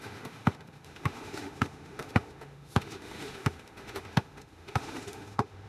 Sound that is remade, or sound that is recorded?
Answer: remade